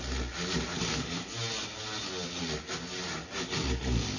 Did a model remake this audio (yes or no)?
no